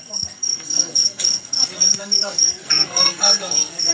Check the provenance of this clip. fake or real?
fake